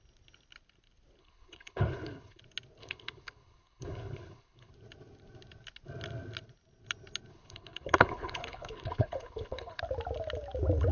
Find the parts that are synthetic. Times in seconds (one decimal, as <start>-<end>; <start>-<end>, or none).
1.2-2.4; 2.8-4.7; 7.3-9.8